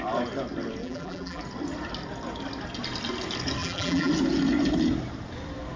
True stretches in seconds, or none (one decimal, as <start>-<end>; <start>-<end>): 0.0-0.8; 1.4-3.6; 4.1-5.8